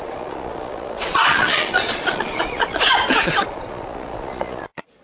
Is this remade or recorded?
remade